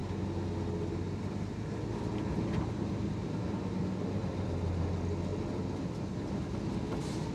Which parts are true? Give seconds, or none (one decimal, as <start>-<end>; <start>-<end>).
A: 0.0-7.3